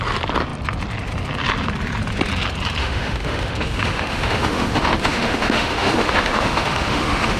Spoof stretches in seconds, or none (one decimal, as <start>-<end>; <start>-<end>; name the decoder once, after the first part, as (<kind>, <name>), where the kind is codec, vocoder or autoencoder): 2.8-7.4 (autoencoder, DAC-VAE)